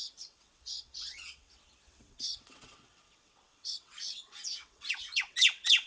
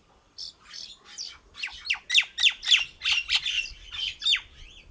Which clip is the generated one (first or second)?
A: first